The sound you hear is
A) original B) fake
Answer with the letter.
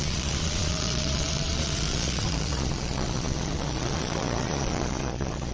B